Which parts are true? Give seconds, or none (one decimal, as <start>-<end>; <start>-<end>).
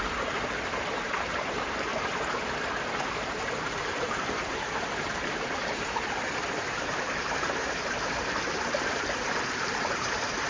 1.9-3.5